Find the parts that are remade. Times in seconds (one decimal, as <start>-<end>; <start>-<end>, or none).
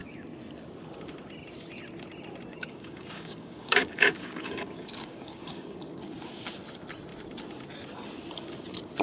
2.5-6.1